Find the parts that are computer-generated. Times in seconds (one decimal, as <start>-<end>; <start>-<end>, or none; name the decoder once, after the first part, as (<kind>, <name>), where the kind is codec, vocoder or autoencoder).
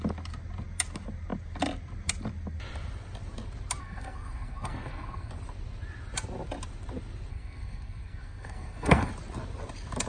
3.8-5.3 (codec, SNAC); 7.3-9.1